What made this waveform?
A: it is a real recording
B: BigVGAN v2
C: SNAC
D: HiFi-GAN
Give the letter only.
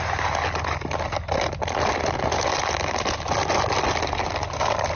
A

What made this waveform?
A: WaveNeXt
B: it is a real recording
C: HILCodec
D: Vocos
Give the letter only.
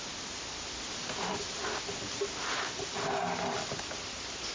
B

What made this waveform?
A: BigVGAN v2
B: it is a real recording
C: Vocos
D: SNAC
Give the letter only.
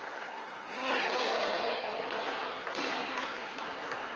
D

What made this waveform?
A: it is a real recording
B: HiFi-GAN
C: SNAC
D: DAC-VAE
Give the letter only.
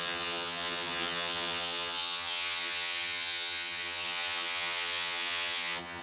B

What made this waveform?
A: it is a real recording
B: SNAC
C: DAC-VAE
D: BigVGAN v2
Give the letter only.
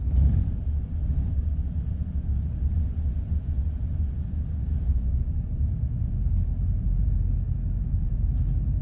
D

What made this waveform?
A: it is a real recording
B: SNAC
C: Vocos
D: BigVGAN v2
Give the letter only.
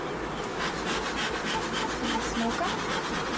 A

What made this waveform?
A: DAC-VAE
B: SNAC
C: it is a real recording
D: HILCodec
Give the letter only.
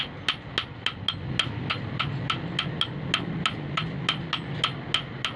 C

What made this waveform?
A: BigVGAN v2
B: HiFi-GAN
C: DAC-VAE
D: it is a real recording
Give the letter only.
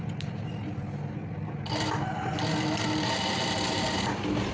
D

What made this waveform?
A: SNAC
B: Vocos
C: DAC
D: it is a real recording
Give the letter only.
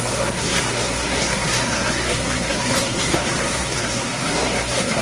A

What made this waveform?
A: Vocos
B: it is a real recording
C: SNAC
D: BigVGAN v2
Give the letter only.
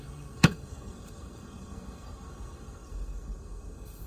C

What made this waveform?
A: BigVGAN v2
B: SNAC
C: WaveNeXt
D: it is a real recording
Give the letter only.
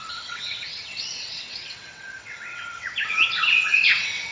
C